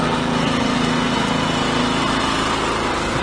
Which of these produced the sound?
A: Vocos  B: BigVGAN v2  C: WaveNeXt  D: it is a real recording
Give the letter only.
D